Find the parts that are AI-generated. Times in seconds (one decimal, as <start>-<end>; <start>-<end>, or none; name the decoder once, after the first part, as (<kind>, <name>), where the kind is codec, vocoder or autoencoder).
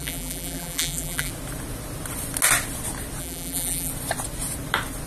0.0-1.3 (vocoder, BigVGAN v2); 3.2-3.9